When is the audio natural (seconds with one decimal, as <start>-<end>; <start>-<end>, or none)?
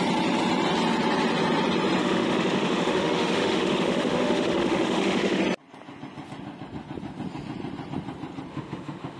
0.0-2.0; 5.4-8.5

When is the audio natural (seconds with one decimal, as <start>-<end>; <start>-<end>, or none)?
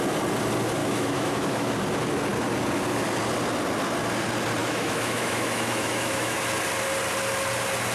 0.0-0.8; 1.7-4.6; 6.4-7.9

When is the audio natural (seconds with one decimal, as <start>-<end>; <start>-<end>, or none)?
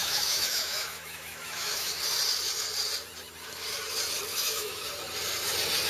2.0-4.3; 4.9-5.9